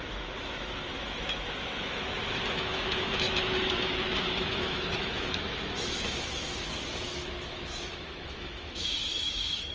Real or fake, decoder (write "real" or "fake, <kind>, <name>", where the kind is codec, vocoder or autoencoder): fake, autoencoder, DAC-VAE